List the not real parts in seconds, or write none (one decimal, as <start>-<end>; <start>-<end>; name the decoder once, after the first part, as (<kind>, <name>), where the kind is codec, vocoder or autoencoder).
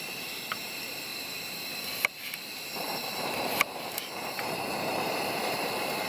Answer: 0.0-6.1 (vocoder, BigVGAN v2)